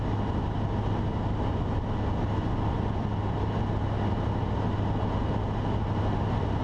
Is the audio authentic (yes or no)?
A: yes